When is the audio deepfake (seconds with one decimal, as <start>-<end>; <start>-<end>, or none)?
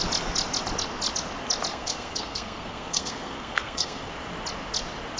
1.7-4.1